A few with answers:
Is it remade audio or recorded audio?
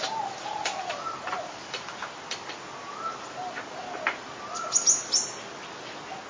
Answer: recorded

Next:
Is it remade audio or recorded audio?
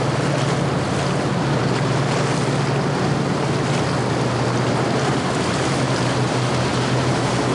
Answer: recorded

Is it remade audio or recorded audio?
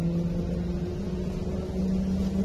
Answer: recorded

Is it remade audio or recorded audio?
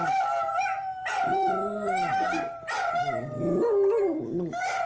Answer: recorded